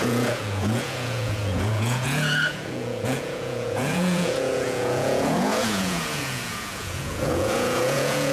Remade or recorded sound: remade